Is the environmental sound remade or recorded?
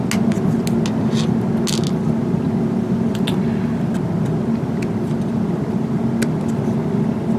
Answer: recorded